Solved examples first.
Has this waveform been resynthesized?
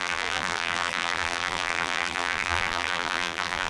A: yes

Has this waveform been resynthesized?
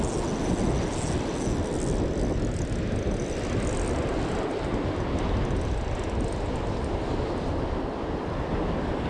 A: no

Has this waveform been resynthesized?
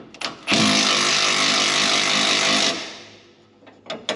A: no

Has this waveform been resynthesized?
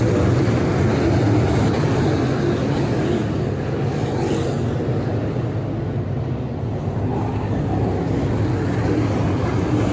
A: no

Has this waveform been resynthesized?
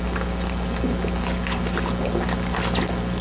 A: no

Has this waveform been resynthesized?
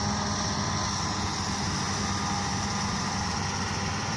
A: no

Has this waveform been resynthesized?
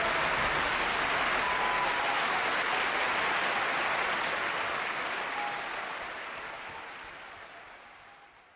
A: no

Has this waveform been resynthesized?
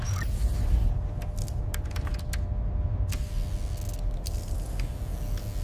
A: no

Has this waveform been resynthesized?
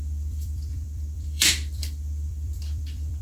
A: yes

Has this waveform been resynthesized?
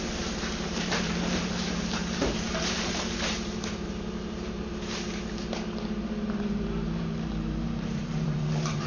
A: yes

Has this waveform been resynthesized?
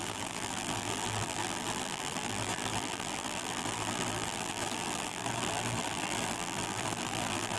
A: yes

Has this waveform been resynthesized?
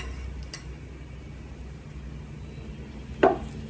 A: no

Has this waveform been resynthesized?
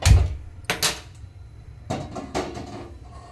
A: no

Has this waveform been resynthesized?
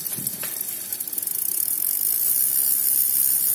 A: no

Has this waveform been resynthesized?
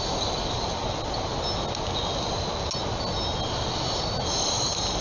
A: no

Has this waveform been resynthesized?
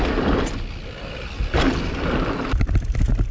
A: no